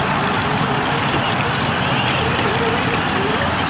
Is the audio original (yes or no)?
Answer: no